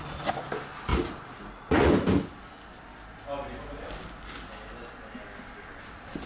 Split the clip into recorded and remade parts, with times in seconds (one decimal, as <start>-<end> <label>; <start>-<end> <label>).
0.0-0.9 recorded; 0.9-1.9 remade; 1.9-6.3 recorded